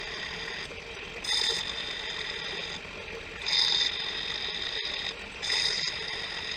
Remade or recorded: recorded